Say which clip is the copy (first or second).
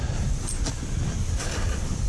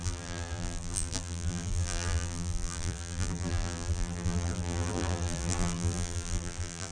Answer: second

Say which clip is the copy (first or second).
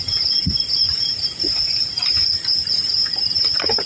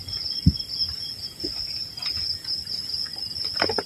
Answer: first